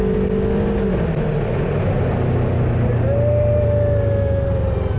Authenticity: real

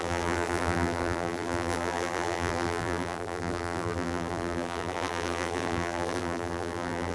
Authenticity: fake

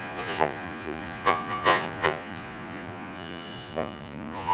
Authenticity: fake